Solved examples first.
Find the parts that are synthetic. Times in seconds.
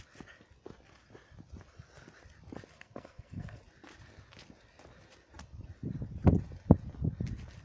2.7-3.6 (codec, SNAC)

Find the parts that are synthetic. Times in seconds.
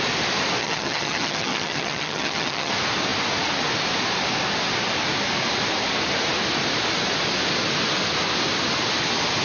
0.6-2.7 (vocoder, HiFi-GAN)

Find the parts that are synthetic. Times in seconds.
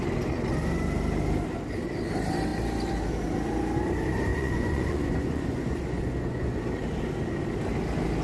4.3-6.6 (vocoder, Vocos)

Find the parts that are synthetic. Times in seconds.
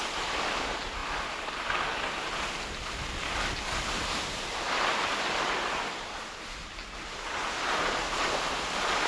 none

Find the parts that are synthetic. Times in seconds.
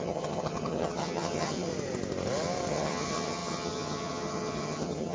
0.0-1.7 (vocoder, HiFi-GAN); 2.7-5.1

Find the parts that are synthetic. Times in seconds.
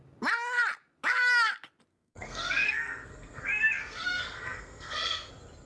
1.9-5.3 (codec, SNAC)